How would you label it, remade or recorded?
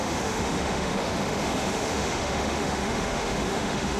remade